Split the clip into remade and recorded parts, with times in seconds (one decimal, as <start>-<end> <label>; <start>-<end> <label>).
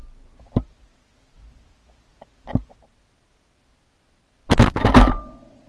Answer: 0.0-5.7 recorded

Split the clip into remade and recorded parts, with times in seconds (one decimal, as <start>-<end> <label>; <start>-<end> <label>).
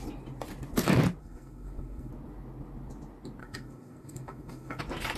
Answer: 0.0-1.2 recorded; 1.2-2.1 remade; 2.1-3.4 recorded; 3.4-4.8 remade; 4.8-5.2 recorded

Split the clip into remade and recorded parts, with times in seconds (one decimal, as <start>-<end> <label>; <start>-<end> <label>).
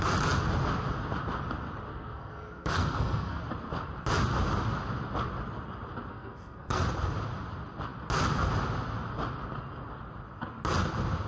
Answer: 0.0-1.9 recorded; 1.9-3.4 remade; 3.4-6.1 recorded; 6.1-6.8 remade; 6.8-11.3 recorded